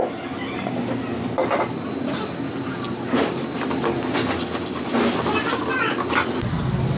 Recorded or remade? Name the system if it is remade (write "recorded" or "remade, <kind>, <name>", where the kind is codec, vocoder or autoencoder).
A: recorded